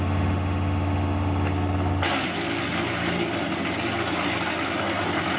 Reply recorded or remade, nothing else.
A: recorded